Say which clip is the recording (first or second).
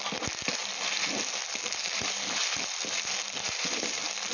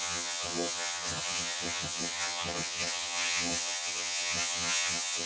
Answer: first